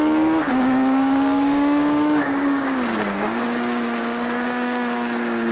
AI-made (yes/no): yes